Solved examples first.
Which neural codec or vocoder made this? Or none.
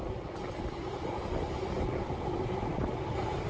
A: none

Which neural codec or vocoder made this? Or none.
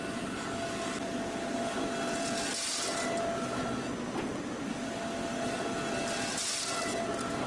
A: none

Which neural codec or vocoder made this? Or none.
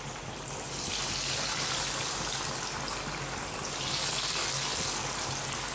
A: none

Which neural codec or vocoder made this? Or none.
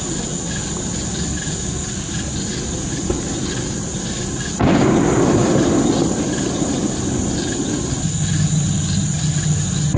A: none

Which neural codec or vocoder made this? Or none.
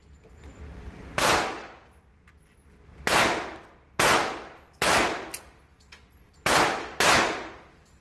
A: none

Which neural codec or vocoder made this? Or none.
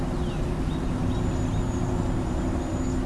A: none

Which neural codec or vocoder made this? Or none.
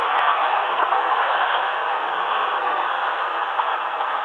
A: codec, SNAC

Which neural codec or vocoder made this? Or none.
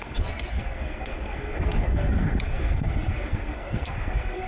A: codec, SNAC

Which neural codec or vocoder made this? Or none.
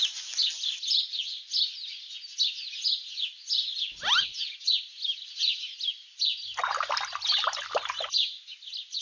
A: none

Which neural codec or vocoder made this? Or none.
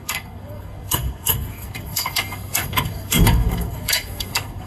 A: codec, SNAC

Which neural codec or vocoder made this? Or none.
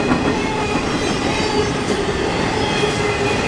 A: none